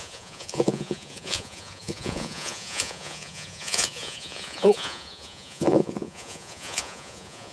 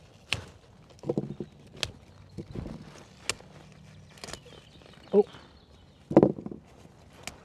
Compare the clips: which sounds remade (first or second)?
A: first